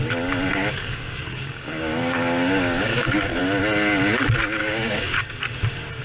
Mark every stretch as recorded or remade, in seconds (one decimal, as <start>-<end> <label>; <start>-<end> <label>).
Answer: 0.0-0.5 recorded; 0.5-3.4 remade; 3.4-4.6 recorded; 4.6-5.2 remade; 5.2-6.0 recorded